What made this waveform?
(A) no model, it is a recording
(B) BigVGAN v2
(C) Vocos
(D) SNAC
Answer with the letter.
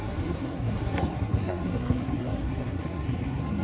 D